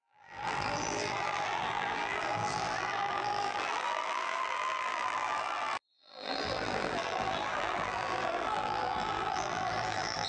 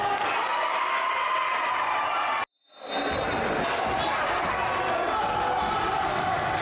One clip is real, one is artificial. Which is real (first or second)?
second